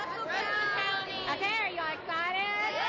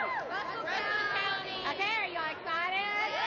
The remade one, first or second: second